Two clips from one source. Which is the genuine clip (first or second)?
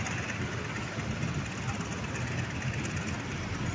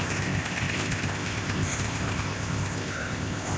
first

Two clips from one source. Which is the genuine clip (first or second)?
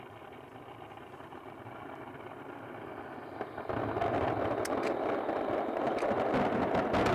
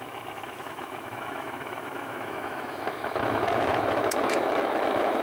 first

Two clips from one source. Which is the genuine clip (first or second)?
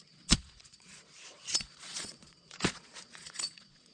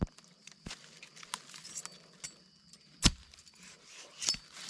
second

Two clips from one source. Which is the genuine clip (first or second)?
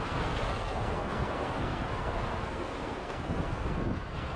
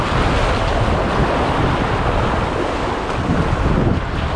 second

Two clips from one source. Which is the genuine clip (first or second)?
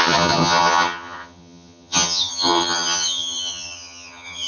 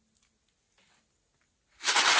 second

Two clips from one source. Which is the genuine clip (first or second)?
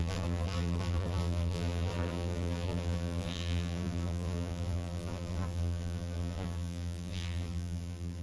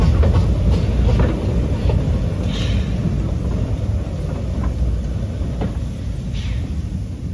second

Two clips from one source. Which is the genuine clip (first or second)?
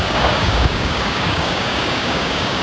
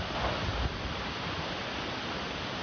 second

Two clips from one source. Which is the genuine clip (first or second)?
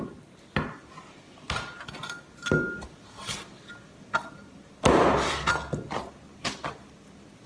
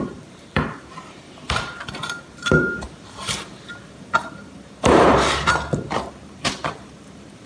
first